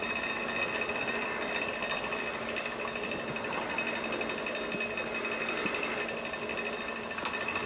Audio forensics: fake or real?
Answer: real